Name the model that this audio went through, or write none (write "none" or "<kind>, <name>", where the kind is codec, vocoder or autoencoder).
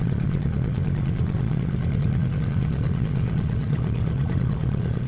vocoder, Vocos